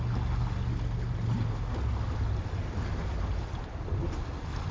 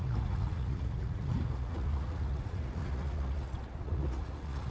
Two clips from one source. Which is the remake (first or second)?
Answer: second